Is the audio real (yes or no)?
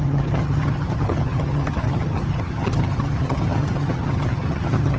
no